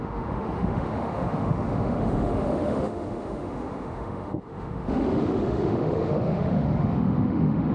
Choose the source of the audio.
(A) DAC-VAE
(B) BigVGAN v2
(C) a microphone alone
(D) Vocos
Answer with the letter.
A